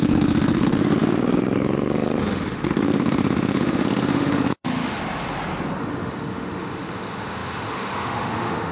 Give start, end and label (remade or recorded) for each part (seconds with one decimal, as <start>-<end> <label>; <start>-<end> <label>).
0.0-5.0 remade; 5.0-5.8 recorded; 5.8-8.7 remade